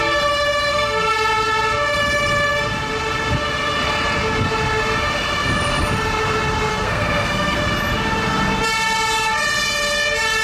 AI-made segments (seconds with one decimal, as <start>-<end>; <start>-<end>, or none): 0.7-1.3; 6.7-7.6